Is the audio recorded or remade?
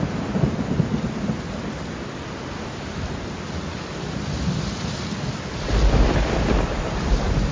recorded